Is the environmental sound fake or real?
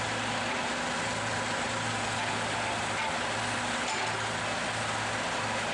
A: real